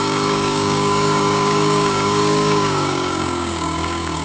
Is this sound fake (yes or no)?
yes